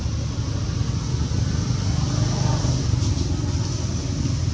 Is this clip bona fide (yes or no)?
yes